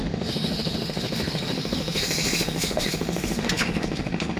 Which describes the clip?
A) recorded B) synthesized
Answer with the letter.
B